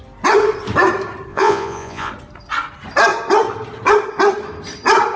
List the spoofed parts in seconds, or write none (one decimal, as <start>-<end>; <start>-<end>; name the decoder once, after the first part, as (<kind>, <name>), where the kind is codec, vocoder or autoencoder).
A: 1.3-2.1 (vocoder, Vocos)